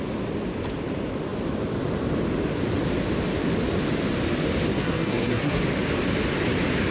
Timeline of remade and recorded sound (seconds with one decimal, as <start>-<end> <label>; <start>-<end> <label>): 0.0-4.7 recorded; 4.7-5.6 remade; 5.6-6.9 recorded